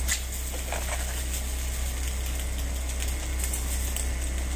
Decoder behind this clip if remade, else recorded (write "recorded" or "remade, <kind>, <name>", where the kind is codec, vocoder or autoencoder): recorded